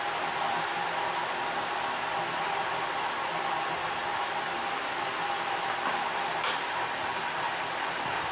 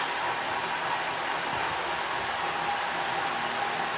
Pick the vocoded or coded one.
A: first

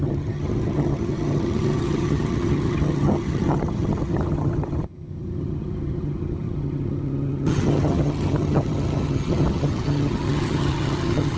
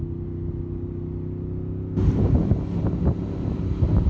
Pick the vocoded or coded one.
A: first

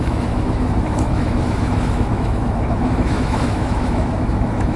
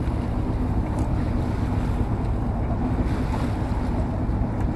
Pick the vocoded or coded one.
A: first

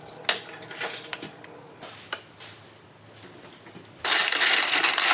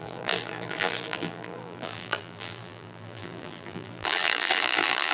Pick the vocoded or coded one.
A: second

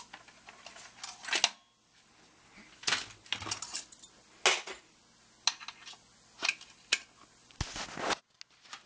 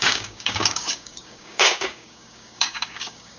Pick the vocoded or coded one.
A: second